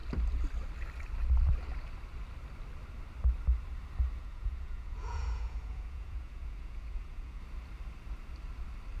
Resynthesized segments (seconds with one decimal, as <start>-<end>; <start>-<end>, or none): 4.2-7.4